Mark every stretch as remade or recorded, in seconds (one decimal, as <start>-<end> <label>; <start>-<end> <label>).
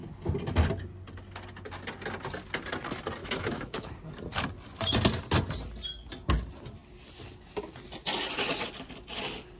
0.0-3.2 recorded; 3.2-3.9 remade; 3.9-9.6 recorded